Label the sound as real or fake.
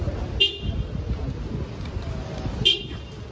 real